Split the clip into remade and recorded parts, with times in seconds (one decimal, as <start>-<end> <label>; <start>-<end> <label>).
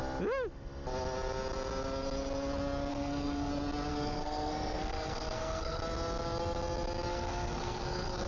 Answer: 0.0-2.9 recorded; 2.9-3.5 remade; 3.5-3.9 recorded; 3.9-5.8 remade; 5.8-7.1 recorded; 7.1-8.3 remade